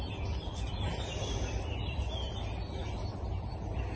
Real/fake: real